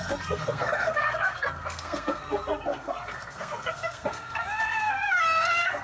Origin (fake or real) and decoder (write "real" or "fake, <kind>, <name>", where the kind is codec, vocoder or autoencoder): fake, codec, SNAC